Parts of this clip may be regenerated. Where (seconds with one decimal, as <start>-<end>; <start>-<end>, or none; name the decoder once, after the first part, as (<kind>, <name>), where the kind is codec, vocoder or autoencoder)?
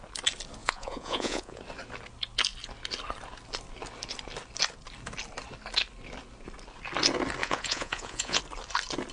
0.6-1.6 (vocoder, Vocos); 7.4-8.4